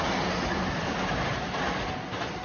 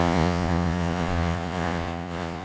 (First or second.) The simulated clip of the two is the second